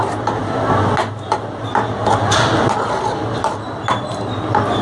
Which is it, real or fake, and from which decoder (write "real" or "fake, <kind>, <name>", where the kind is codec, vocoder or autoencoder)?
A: real